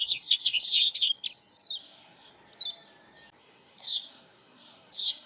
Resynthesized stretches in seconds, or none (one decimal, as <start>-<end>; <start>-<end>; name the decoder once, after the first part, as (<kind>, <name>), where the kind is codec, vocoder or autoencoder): 0.0-1.1 (codec, SNAC); 1.8-2.3; 3.4-5.3